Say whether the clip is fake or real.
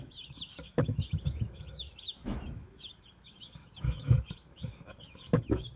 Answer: fake